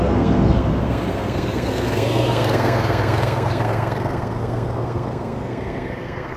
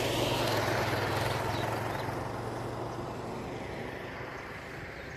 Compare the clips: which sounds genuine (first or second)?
second